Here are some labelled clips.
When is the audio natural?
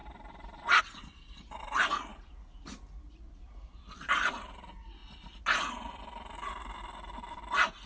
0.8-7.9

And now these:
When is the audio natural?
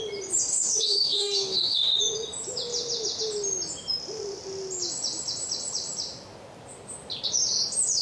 0.0-0.5; 2.0-8.0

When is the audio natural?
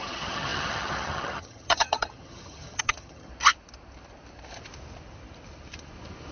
3.3-6.3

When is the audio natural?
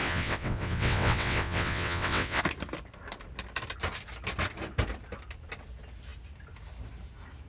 2.4-7.5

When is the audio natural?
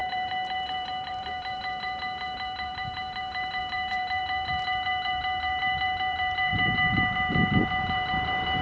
none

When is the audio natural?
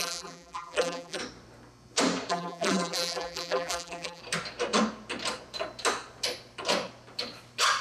1.2-2.3; 4.2-7.8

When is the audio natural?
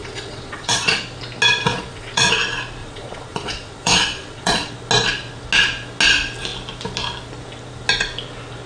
1.0-1.7; 2.3-2.8; 4.7-8.7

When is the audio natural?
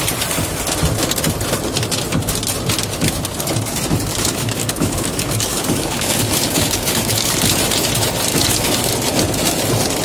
0.0-4.1; 7.4-8.3; 8.9-10.0